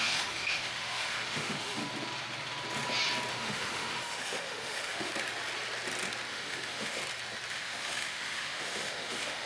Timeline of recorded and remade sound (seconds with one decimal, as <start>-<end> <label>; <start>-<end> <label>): 0.0-1.8 remade; 1.8-3.3 recorded; 3.3-5.1 remade; 5.1-6.3 recorded; 6.3-7.0 remade; 7.0-7.5 recorded; 7.5-9.5 remade

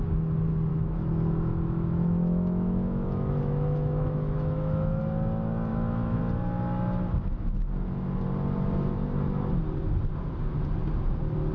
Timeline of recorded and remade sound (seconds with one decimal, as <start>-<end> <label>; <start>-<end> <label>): 0.0-0.7 recorded; 0.7-5.0 remade; 5.0-5.7 recorded; 5.7-6.2 remade; 6.2-11.5 recorded

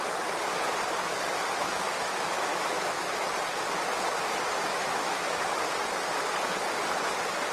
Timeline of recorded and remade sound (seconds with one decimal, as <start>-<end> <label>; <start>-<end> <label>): 0.0-1.1 recorded; 1.1-3.3 remade; 3.3-4.7 recorded; 4.7-5.4 remade; 5.4-7.5 recorded

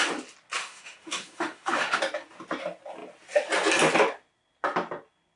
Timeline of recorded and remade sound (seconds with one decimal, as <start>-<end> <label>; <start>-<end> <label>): 0.0-0.6 recorded; 0.6-2.0 remade; 2.0-5.4 recorded